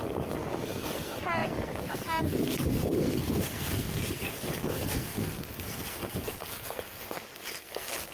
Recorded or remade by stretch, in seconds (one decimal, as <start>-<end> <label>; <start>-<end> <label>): 0.0-8.1 remade